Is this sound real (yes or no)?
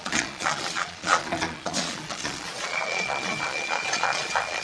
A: no